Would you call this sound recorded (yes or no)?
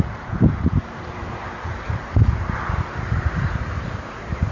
no